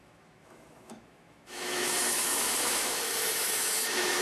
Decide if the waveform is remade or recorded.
remade